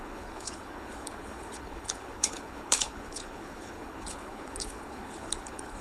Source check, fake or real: fake